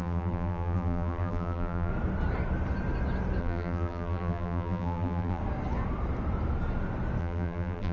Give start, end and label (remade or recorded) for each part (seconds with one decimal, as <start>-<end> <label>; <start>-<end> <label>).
0.0-1.9 remade; 1.9-3.4 recorded; 3.4-5.4 remade; 5.4-7.2 recorded; 7.2-7.9 remade